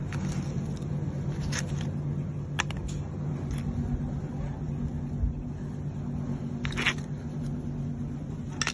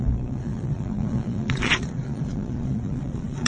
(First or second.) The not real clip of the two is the second